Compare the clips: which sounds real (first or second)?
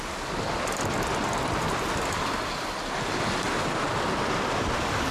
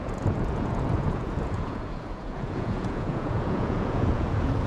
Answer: first